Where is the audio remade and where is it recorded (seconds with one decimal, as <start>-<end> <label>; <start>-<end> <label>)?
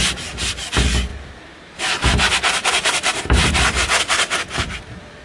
0.0-5.2 remade